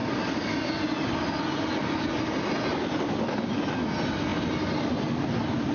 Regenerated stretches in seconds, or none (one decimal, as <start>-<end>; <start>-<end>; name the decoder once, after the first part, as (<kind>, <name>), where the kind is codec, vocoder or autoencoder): none

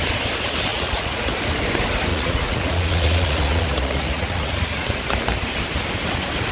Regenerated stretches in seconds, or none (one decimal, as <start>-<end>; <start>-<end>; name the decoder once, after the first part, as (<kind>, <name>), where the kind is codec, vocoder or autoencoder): 0.7-1.3 (vocoder, Vocos); 2.1-5.0

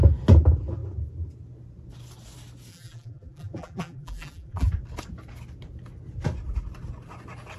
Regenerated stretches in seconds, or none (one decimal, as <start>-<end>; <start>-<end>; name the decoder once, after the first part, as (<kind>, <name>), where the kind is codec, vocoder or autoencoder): 2.7-4.7 (vocoder, BigVGAN v2)